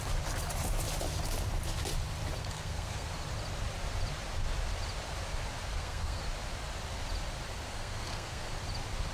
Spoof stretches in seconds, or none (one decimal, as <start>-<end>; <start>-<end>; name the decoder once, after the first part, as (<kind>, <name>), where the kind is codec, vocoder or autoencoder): 2.4-3.1 (codec, SNAC); 5.7-6.2; 7.7-8.5